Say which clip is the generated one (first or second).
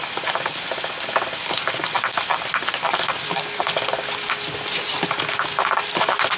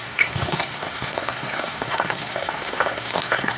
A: second